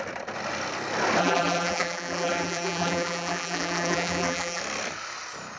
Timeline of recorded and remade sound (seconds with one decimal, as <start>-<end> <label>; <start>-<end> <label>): 0.0-1.2 recorded; 1.2-4.6 remade; 4.6-5.6 recorded